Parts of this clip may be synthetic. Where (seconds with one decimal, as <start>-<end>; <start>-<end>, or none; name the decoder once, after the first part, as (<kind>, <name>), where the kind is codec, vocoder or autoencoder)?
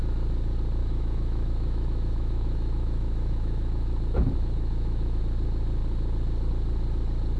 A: 0.8-5.2 (autoencoder, DAC-VAE)